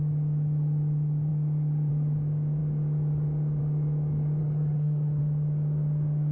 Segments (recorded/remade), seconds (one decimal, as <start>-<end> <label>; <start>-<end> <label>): 0.0-4.4 recorded; 4.4-5.2 remade; 5.2-6.3 recorded